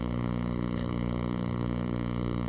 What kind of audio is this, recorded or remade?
remade